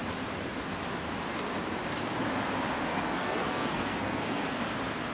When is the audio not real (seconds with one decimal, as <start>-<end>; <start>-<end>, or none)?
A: 2.9-4.6